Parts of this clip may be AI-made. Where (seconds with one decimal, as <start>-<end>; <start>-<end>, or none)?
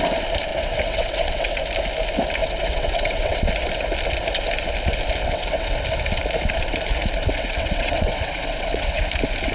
0.5-1.6; 2.4-3.5; 5.2-5.8; 7.2-9.0